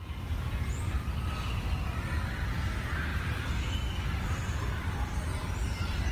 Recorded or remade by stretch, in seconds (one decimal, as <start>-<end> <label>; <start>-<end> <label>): 0.0-6.1 recorded